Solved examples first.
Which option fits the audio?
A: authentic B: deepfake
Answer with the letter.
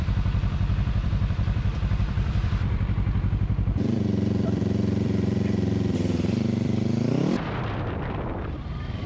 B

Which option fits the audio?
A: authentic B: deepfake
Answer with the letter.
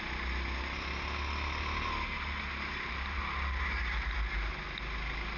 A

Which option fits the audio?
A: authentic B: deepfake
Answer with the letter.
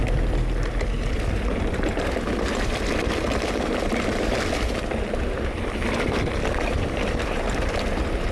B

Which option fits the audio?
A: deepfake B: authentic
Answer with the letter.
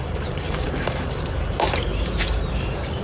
A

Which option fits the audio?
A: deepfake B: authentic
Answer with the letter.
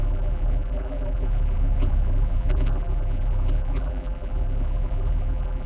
A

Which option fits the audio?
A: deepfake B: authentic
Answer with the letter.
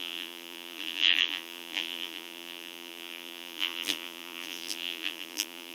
A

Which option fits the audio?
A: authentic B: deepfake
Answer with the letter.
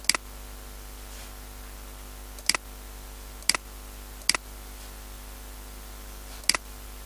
A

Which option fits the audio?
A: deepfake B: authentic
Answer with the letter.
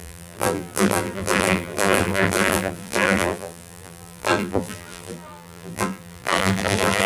A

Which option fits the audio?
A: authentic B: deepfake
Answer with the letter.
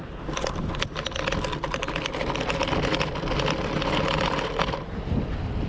A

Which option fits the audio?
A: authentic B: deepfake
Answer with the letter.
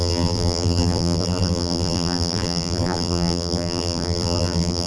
B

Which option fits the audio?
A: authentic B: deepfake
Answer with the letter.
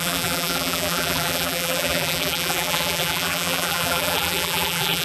B